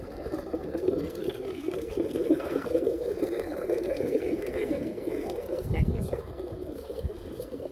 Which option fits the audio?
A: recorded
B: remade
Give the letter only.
B